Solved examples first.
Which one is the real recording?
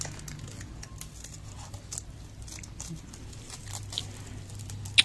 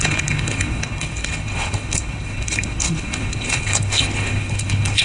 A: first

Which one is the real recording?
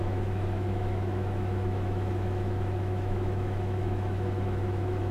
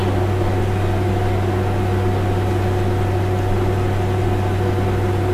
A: second